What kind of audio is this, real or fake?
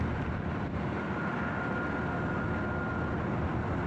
real